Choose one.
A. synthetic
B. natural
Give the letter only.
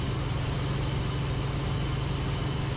B